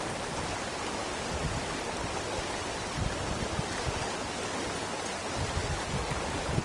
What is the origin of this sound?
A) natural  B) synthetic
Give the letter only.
A